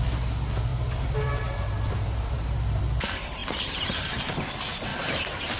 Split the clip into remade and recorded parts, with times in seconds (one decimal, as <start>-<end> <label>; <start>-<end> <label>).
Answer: 0.0-0.7 recorded; 0.7-2.8 remade; 2.8-3.4 recorded; 3.4-4.2 remade; 4.2-4.9 recorded; 4.9-5.6 remade